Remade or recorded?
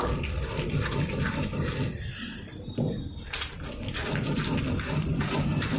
remade